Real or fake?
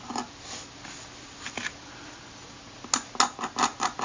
real